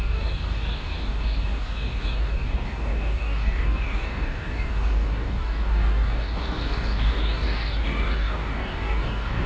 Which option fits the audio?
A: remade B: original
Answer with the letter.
A